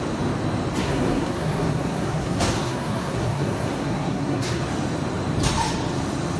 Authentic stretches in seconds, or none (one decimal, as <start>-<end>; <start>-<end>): 0.0-0.8; 4.6-6.4